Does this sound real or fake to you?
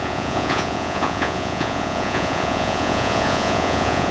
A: fake